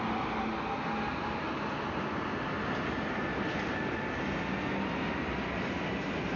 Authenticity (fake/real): real